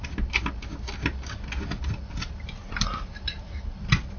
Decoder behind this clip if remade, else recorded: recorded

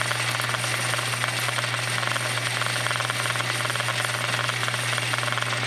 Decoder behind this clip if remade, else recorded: recorded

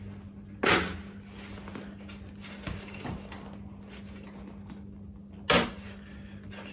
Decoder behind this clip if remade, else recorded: recorded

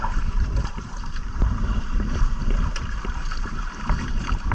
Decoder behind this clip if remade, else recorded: remade, vocoder, BigVGAN v2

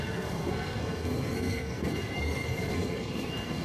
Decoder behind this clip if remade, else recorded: remade, codec, SNAC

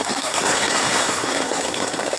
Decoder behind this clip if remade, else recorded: remade, codec, SNAC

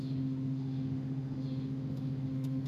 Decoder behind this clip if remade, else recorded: remade, autoencoder, DAC-VAE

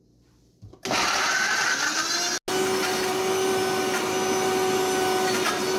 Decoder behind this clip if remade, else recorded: recorded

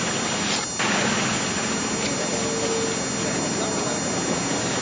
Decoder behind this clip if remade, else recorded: recorded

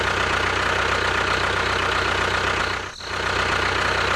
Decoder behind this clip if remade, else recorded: recorded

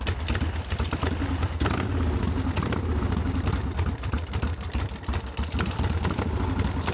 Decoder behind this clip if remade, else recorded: recorded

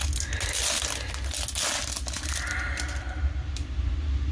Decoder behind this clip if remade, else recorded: recorded